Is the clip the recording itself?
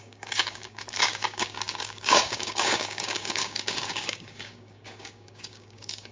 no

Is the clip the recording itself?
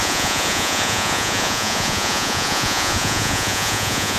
no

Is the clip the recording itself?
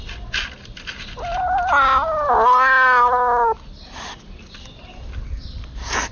yes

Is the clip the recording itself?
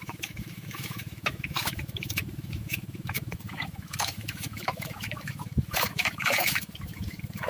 no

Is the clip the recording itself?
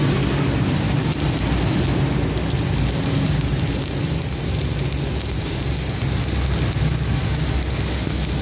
yes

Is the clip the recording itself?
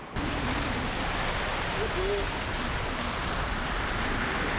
yes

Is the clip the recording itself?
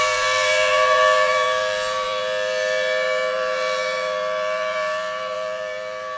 no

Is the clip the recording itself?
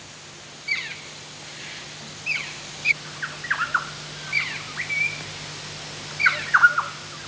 yes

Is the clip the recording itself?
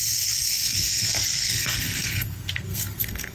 no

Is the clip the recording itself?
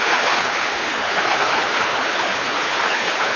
no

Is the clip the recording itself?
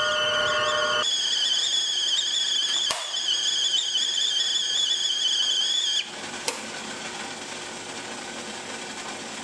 yes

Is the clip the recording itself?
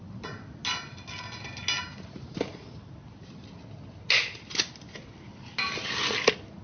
yes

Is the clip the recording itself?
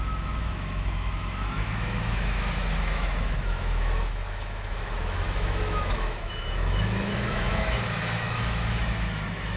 no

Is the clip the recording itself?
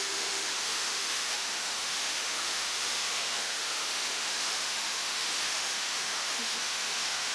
no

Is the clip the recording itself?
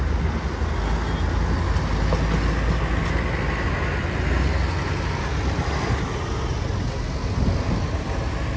yes